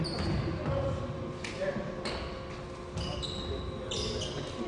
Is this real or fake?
real